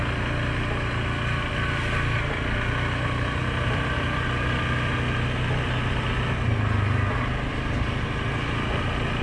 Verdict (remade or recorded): recorded